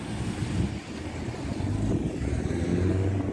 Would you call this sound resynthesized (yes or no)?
no